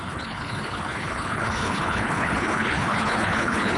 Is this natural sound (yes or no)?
no